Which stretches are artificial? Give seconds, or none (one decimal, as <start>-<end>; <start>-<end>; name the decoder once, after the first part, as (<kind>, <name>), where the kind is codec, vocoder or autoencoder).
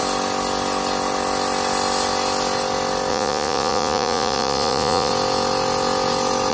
3.1-5.1 (vocoder, Vocos)